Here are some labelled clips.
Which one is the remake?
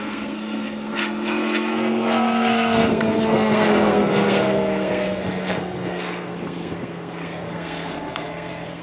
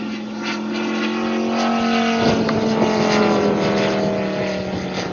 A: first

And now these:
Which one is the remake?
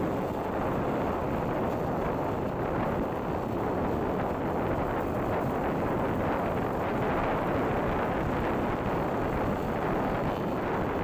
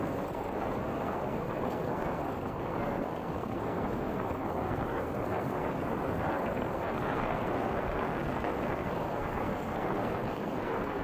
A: second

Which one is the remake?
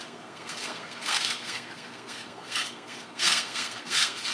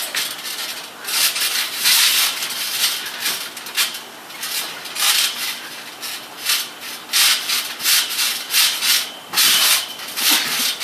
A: first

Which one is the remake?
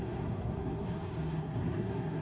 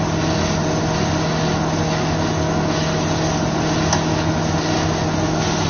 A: first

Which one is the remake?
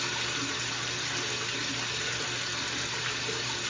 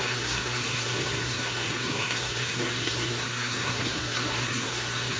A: second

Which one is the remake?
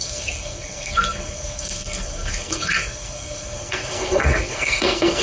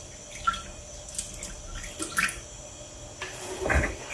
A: first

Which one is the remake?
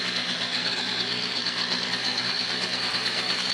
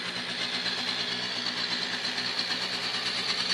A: first